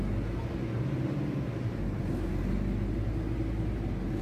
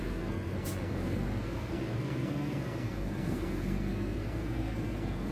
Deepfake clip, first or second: second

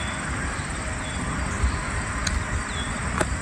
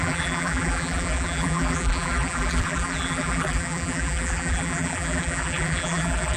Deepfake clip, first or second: second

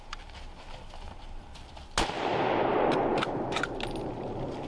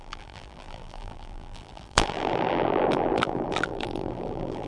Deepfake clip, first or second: second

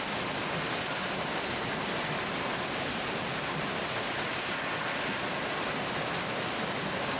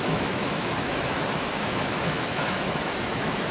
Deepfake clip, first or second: second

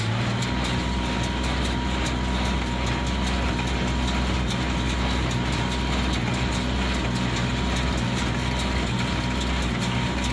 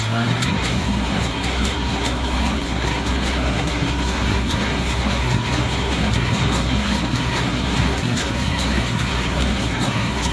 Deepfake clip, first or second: second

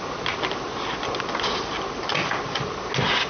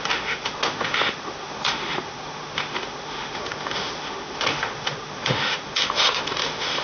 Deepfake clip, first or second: second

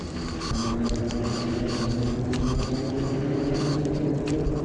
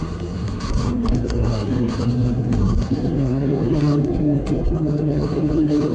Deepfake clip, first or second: second